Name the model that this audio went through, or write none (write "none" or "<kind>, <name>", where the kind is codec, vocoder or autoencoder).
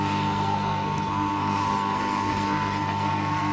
codec, SNAC